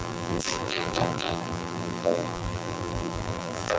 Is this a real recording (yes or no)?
no